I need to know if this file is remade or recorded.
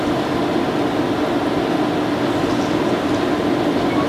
recorded